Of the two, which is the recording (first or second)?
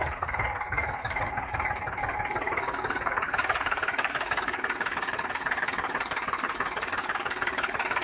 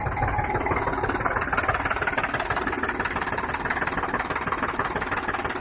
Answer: second